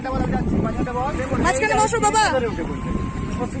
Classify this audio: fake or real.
real